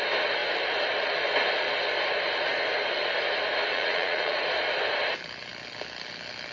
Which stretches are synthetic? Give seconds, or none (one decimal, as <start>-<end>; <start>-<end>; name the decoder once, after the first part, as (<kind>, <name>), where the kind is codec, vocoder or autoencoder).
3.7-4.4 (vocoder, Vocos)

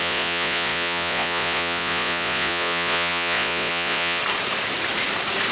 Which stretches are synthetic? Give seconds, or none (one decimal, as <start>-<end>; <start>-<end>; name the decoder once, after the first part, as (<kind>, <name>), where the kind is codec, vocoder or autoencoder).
0.0-4.2 (vocoder, Vocos)

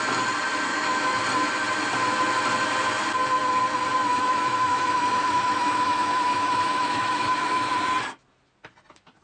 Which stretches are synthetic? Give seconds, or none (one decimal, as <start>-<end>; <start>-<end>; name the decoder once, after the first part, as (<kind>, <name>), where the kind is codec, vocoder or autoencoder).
0.7-1.2 (autoencoder, DAC-VAE); 4.1-7.7

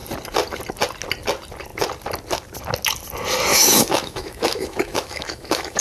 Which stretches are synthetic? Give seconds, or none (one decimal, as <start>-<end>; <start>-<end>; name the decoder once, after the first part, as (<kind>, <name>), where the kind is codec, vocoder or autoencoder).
3.5-5.8 (autoencoder, DAC-VAE)

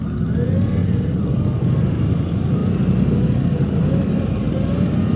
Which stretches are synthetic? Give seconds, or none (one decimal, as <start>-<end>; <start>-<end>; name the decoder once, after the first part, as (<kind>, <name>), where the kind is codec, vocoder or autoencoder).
none

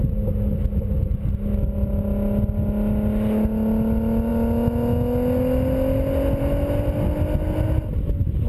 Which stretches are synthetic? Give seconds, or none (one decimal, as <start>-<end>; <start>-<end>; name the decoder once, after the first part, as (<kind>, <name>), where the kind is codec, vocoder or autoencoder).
none